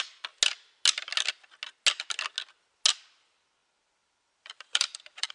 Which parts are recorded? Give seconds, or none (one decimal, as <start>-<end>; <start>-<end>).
0.0-3.6